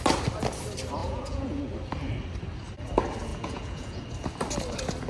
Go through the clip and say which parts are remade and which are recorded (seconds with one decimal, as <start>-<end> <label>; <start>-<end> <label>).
0.0-1.0 recorded; 1.0-1.6 remade; 1.6-3.3 recorded; 3.3-4.0 remade; 4.0-5.1 recorded

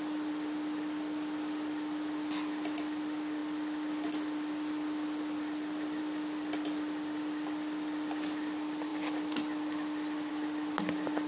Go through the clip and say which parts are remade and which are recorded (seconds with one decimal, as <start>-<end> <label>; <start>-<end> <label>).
0.0-11.3 recorded

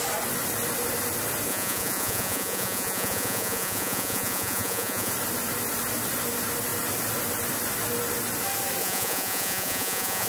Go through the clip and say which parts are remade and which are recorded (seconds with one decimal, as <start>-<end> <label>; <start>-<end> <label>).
0.0-1.5 recorded; 1.5-5.1 remade; 5.1-8.8 recorded; 8.8-10.3 remade

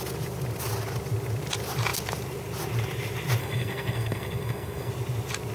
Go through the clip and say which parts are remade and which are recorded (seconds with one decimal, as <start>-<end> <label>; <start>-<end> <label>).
0.0-3.4 recorded; 3.4-4.9 remade; 4.9-5.5 recorded

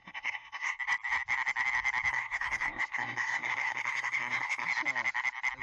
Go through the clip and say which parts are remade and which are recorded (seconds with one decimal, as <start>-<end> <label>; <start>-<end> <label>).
0.0-0.8 remade; 0.8-2.1 recorded; 2.1-4.7 remade; 4.7-5.6 recorded

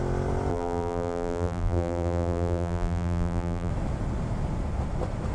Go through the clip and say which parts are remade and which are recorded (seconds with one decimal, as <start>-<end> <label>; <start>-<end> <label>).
0.0-0.5 recorded; 0.5-3.7 remade; 3.7-5.3 recorded

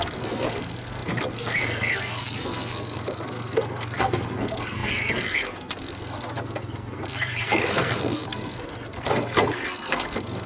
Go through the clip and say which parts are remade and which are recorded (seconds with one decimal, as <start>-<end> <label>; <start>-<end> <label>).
0.0-10.5 remade